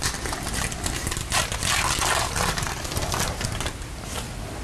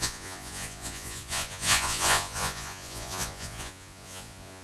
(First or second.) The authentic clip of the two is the first